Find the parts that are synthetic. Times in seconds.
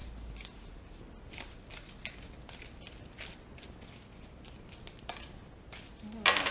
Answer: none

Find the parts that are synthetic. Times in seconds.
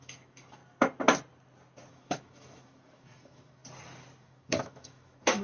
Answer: 0.0-0.6; 1.9-3.6; 4.2-5.4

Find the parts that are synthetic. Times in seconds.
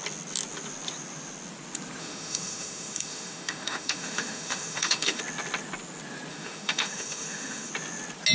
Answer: 2.0-5.2; 6.3-7.7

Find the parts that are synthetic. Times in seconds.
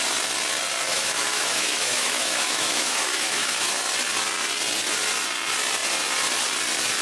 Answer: 0.9-3.7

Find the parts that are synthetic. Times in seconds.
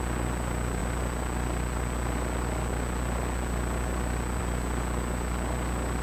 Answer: none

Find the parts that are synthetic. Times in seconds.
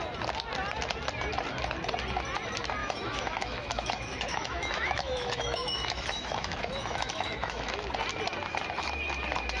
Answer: 2.8-7.9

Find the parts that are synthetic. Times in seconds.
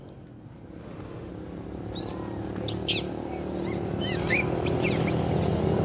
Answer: 0.8-1.3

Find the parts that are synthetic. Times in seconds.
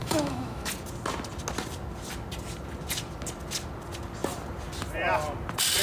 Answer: 0.0-0.7